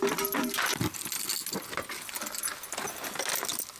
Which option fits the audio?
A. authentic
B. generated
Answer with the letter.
A